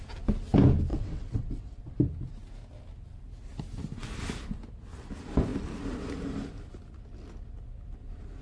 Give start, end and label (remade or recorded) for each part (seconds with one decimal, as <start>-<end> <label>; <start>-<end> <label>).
0.0-0.9 recorded; 0.9-1.8 remade; 1.8-8.4 recorded